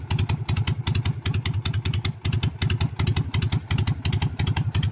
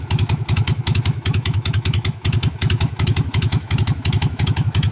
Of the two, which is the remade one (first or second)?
second